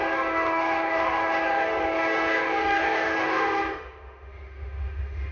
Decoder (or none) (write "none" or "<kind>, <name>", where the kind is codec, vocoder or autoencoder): autoencoder, DAC-VAE